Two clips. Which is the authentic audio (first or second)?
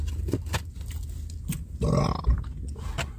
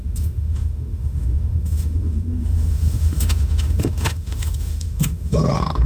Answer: first